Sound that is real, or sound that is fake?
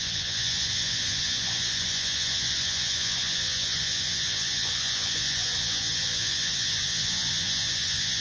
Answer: fake